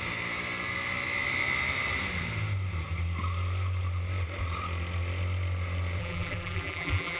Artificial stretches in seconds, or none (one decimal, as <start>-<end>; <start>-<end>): 6.0-7.2